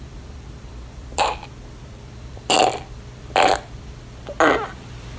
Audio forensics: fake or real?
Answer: fake